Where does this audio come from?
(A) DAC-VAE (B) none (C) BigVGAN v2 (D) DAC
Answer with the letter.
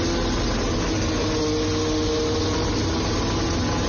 B